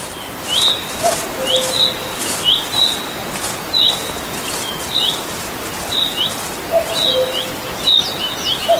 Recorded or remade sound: recorded